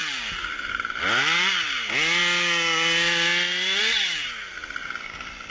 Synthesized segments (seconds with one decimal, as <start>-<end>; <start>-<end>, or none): none